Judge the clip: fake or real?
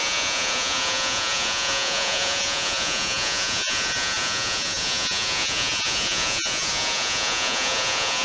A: fake